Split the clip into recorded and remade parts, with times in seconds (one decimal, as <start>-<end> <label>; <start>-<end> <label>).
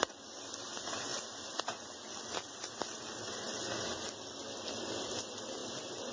0.0-6.1 recorded